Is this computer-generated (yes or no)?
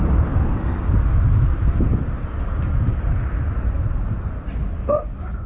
no